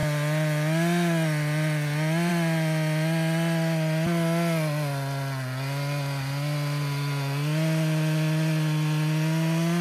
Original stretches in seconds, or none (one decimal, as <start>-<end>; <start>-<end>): 0.0-9.8